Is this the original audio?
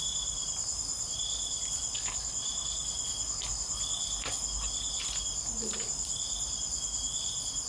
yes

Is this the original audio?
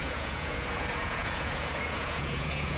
no